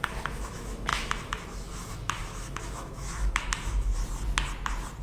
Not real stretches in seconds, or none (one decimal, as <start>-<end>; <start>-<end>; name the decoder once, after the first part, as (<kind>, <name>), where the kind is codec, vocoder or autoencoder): 0.0-3.9 (autoencoder, DAC-VAE)